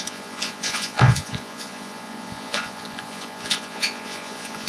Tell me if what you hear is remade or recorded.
remade